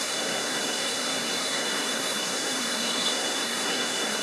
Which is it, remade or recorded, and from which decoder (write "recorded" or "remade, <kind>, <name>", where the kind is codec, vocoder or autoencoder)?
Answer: remade, codec, SNAC